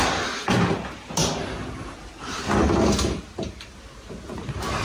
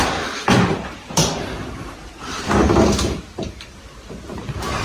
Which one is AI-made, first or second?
second